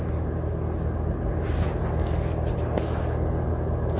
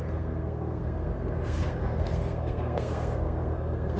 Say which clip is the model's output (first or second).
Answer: second